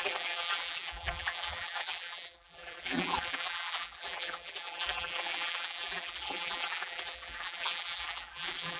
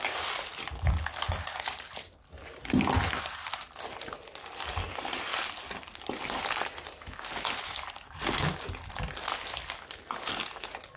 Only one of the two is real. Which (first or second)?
second